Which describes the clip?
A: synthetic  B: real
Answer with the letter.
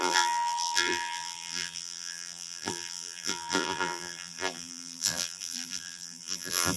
A